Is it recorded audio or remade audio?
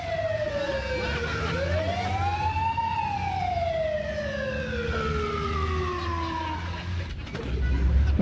recorded